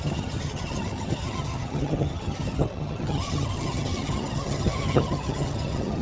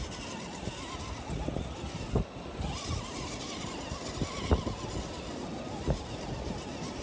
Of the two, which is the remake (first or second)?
first